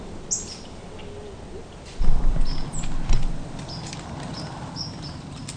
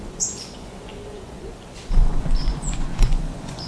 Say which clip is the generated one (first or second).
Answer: second